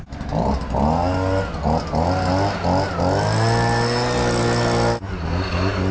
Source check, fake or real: real